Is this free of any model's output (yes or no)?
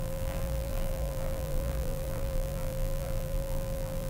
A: no